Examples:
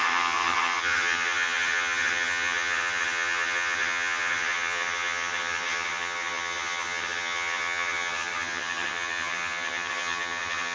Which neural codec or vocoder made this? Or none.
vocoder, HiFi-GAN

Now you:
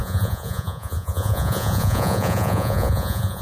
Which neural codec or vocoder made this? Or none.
vocoder, Vocos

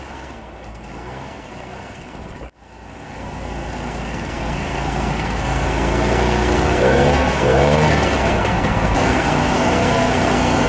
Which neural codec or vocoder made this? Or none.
codec, SNAC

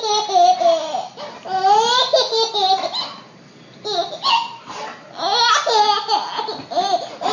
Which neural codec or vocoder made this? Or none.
none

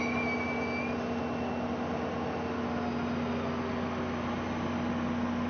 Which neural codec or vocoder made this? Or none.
none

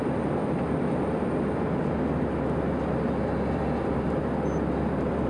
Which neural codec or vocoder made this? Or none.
none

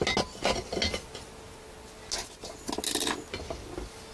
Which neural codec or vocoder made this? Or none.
none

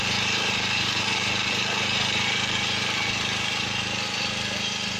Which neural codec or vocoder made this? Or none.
vocoder, BigVGAN v2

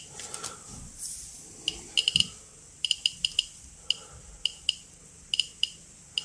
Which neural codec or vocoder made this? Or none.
none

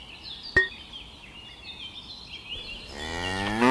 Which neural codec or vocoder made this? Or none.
none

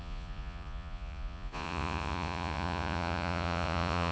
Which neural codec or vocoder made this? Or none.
vocoder, Vocos